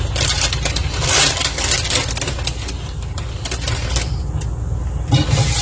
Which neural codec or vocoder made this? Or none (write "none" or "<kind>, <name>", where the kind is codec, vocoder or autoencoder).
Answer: none